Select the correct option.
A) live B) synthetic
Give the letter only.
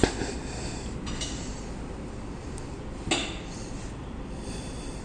A